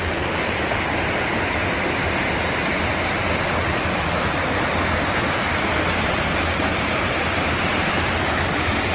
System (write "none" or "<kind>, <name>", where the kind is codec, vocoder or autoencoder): none